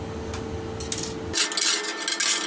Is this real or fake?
real